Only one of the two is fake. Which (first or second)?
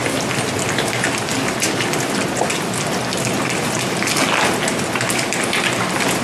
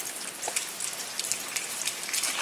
second